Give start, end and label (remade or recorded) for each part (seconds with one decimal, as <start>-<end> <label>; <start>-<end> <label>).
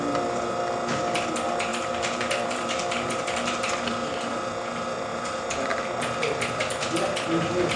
0.0-1.7 recorded; 1.7-3.7 remade; 3.7-5.1 recorded; 5.1-5.8 remade; 5.8-7.8 recorded